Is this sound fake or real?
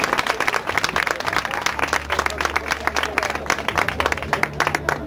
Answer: real